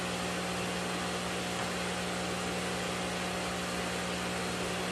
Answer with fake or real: real